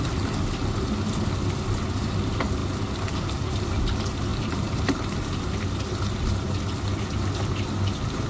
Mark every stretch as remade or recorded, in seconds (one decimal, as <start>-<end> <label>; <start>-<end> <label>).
0.0-4.3 recorded; 4.3-4.9 remade; 4.9-8.3 recorded